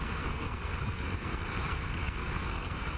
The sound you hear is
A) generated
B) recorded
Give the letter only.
A